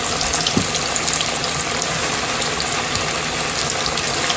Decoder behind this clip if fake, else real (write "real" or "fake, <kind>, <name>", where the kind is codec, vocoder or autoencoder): real